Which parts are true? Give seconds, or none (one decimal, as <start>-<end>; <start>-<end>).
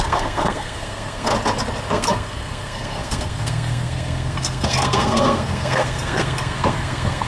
1.3-1.9